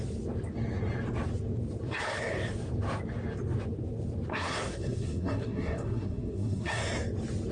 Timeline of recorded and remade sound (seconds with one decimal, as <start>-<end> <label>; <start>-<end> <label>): 0.0-4.3 recorded; 4.3-6.8 remade; 6.8-7.5 recorded